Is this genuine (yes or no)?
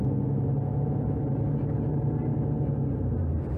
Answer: yes